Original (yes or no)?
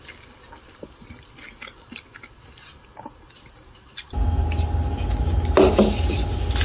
yes